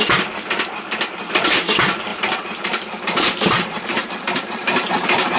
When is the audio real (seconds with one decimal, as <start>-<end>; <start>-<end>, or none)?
0.0-2.1